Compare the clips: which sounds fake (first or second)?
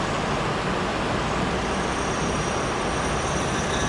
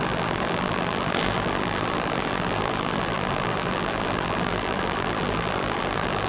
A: second